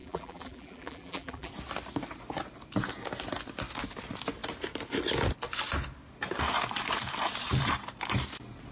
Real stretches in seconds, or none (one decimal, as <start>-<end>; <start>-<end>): 1.5-8.7